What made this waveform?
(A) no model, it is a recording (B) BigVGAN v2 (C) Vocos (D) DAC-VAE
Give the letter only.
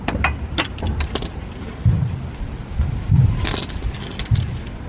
A